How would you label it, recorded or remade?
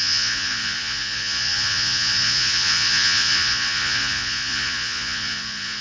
remade